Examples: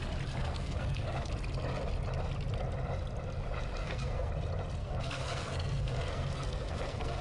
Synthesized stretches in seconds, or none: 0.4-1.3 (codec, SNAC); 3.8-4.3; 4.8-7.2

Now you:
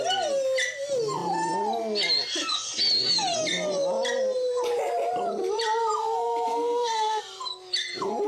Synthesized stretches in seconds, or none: 6.5-7.2 (codec, SNAC)

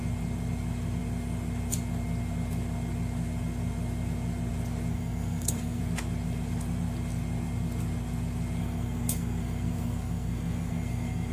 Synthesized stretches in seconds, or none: 4.9-5.8 (codec, SNAC); 8.6-11.3